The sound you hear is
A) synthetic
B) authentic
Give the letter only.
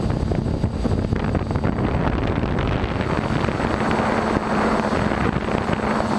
B